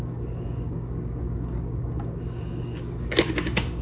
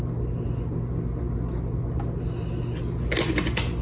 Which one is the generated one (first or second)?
first